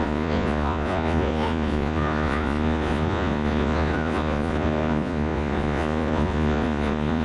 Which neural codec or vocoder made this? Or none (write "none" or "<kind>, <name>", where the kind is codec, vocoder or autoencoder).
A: vocoder, Vocos